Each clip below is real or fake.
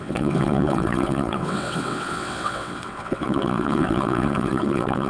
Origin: fake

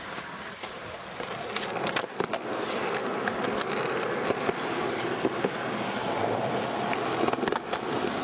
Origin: real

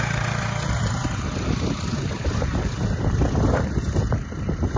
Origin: real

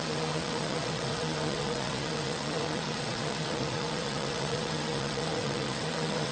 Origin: fake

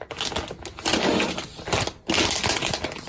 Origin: real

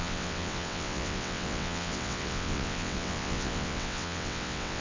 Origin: fake